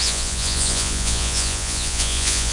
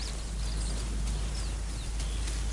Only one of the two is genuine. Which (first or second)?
second